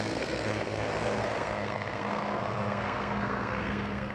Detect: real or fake fake